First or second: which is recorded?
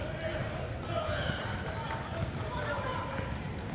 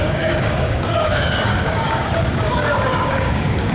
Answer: first